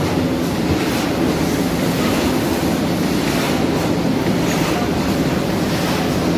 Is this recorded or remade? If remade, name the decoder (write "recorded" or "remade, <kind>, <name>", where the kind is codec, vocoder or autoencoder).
recorded